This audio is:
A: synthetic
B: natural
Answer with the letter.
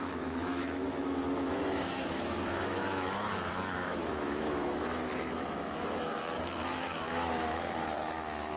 A